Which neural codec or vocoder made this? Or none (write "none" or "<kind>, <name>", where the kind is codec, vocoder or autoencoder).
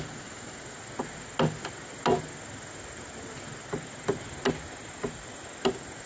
none